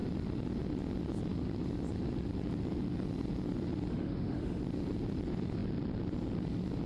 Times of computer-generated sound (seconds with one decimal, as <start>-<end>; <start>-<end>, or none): 3.9-4.6